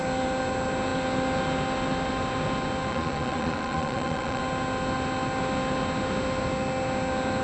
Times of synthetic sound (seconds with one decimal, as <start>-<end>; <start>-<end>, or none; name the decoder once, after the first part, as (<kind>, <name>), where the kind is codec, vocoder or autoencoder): 2.9-4.4 (vocoder, Vocos)